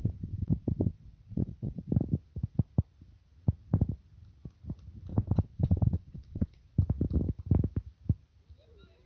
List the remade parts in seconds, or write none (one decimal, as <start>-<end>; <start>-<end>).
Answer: 0.0-1.8; 5.1-6.6